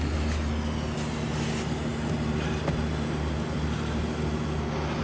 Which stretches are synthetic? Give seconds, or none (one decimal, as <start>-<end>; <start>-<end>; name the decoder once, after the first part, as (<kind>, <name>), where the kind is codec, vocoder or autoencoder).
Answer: none